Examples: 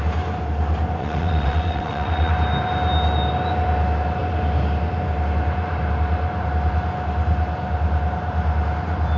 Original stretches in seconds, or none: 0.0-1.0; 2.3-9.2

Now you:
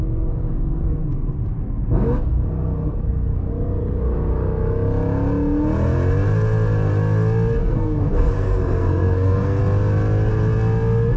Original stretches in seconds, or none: 3.5-7.6; 9.6-11.2

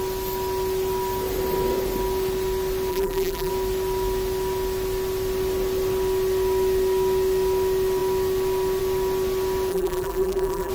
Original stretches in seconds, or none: 0.0-2.9; 3.5-9.7

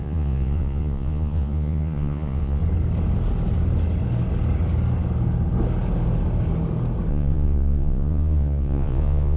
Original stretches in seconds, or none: 2.6-7.1

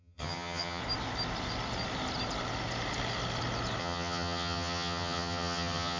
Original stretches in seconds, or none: 0.8-3.8

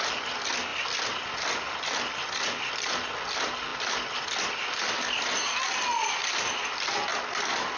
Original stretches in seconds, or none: 0.0-7.8

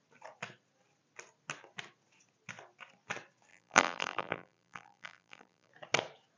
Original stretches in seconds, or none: 0.0-3.5; 5.7-6.4

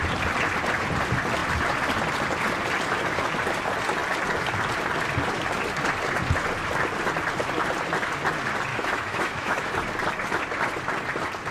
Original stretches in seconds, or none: 0.0-8.7; 9.7-11.5